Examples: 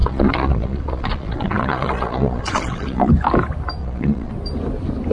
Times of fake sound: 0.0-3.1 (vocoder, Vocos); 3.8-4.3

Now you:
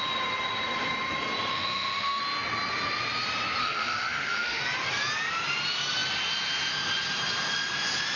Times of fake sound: 1.5-2.2 (autoencoder, DAC-VAE); 3.6-4.6

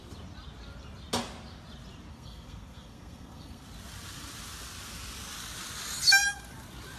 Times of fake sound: 2.1-3.6 (codec, SNAC)

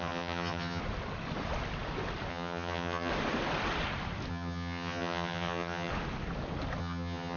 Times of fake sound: 0.0-0.8 (vocoder, HiFi-GAN); 2.3-3.1; 4.3-5.9; 6.8-7.4